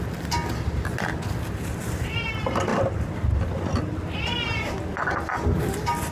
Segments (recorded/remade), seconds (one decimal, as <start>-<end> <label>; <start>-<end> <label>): 0.0-6.1 recorded